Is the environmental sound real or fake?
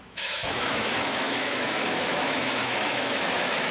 fake